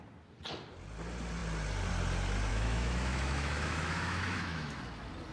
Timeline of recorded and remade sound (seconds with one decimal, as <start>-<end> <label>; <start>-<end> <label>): 0.0-2.5 recorded; 2.5-4.8 remade; 4.8-5.3 recorded